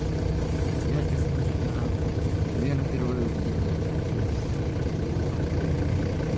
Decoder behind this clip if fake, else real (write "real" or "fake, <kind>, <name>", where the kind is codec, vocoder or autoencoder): real